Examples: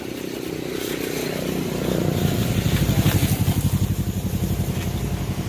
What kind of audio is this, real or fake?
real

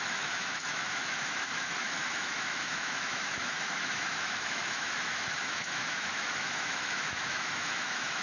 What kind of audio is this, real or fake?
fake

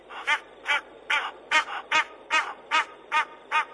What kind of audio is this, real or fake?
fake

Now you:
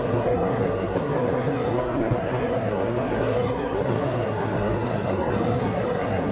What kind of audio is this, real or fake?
fake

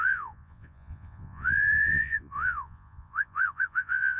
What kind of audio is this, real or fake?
fake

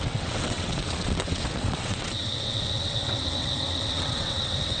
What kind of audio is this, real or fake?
fake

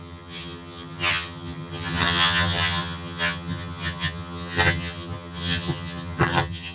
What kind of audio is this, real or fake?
fake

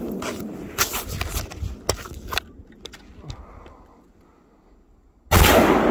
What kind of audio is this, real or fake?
real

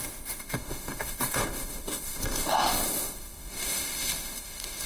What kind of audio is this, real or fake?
fake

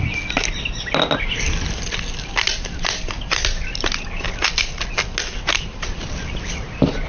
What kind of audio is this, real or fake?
real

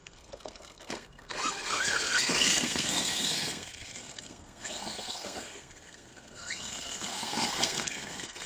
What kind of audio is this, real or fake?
fake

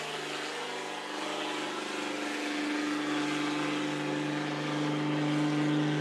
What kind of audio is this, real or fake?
real